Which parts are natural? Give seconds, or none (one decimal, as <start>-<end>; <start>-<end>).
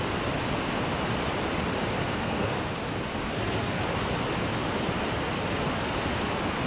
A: 0.0-2.0; 2.6-3.2; 3.8-6.7